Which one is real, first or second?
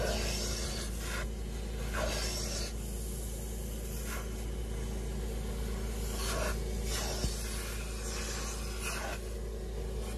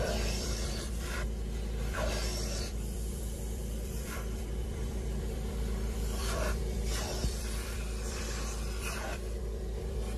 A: first